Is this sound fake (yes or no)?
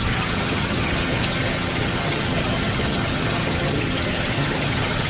yes